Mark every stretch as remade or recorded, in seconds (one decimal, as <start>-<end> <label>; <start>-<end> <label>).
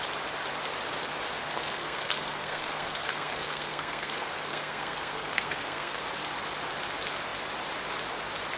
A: 0.0-1.4 recorded; 1.4-6.0 remade; 6.0-8.6 recorded